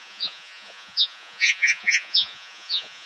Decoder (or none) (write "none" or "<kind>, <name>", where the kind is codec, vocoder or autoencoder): vocoder, Vocos